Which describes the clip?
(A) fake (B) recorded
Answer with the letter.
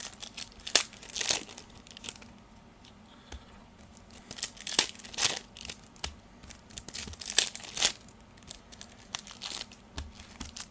B